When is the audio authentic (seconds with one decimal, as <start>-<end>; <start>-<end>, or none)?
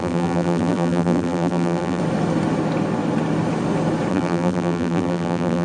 2.0-4.1